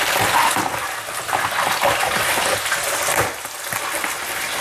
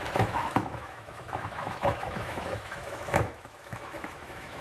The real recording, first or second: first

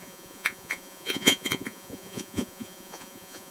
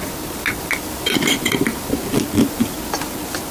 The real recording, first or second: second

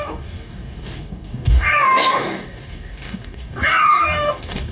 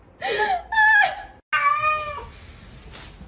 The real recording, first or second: second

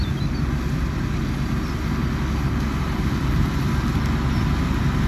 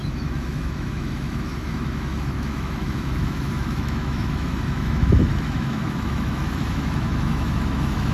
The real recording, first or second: first